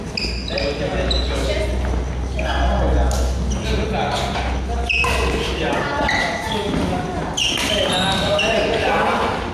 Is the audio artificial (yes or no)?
no